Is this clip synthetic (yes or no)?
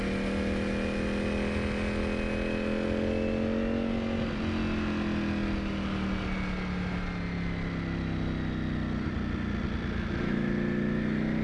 no